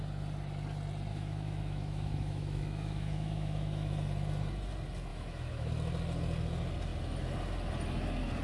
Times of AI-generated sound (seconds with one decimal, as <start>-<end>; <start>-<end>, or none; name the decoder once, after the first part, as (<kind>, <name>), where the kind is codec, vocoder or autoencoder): 1.1-3.9 (autoencoder, DAC-VAE); 5.1-5.7